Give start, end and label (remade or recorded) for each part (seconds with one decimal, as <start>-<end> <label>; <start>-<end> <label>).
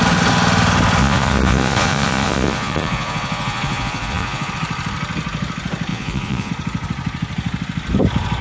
0.0-1.0 recorded; 1.0-4.5 remade; 4.5-5.9 recorded; 5.9-6.5 remade; 6.5-8.4 recorded